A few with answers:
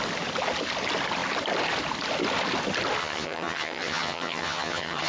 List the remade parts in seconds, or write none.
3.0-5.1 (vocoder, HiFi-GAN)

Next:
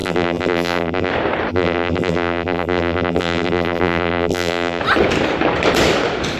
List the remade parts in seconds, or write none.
0.0-1.1 (vocoder, BigVGAN v2); 1.5-4.8

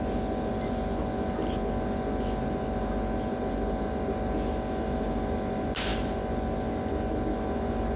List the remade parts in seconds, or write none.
none

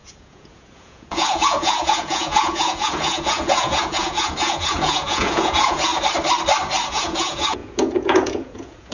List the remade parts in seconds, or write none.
0.0-5.9 (vocoder, Vocos); 6.9-8.9

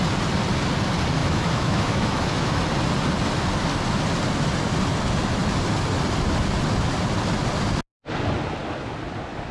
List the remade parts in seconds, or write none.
1.2-2.6 (autoencoder, DAC-VAE)